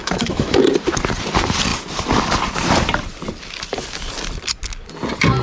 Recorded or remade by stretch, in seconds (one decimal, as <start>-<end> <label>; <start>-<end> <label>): 0.0-0.6 remade; 0.6-5.4 recorded